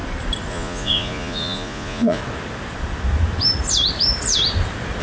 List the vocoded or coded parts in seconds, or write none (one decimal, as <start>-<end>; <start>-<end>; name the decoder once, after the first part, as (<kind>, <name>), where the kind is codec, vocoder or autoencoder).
0.5-2.2 (vocoder, Vocos)